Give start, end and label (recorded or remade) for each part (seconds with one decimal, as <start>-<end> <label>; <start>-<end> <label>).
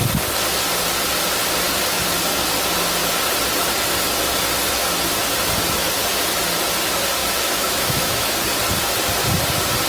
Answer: 0.0-7.2 recorded; 7.2-8.3 remade; 8.3-9.9 recorded